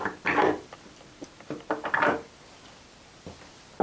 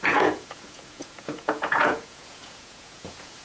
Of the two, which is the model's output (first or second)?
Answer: second